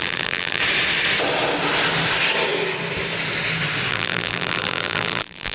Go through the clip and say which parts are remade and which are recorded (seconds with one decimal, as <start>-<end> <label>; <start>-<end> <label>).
0.0-0.6 remade; 0.6-3.9 recorded; 3.9-5.5 remade